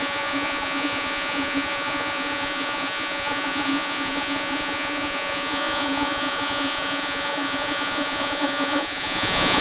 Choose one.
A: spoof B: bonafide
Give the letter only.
A